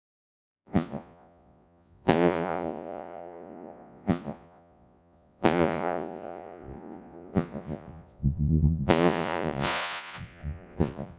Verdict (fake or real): fake